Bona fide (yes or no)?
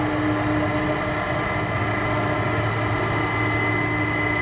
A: yes